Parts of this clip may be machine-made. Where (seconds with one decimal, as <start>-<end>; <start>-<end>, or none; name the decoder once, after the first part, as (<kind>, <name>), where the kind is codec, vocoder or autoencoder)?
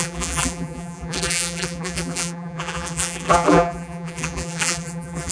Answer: 0.0-5.3 (vocoder, BigVGAN v2)